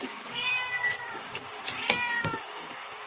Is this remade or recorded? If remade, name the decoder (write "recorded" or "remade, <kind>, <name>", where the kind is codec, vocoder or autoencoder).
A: remade, codec, DAC